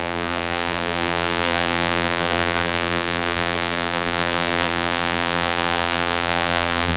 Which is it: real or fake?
fake